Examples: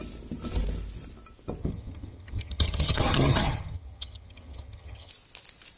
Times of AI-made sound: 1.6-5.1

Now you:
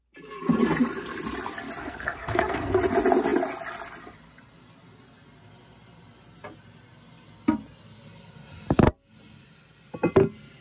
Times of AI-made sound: 1.8-2.8

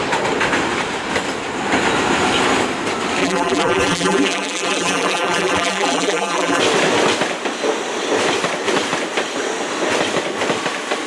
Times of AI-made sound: 3.2-6.6

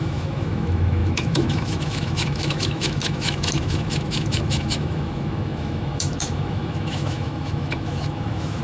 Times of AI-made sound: 0.0-8.6

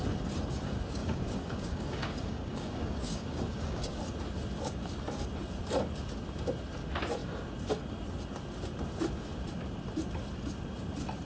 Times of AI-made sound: 1.0-4.0

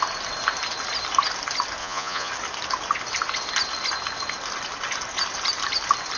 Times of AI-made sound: 1.8-2.3

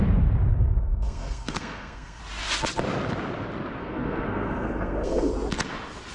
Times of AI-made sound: 0.5-2.2; 3.8-5.3